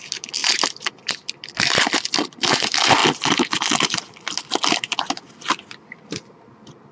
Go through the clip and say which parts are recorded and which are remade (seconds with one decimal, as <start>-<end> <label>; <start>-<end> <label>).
0.0-6.9 recorded